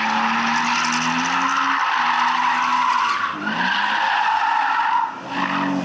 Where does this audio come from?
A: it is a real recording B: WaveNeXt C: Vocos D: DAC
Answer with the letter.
A